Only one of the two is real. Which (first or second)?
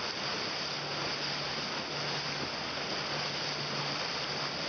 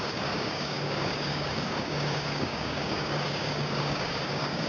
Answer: first